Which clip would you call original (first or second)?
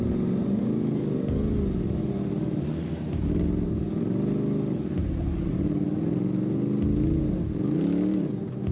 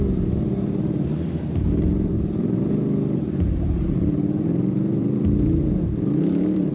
first